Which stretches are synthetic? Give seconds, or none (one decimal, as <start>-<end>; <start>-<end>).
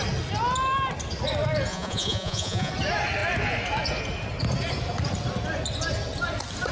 1.7-2.7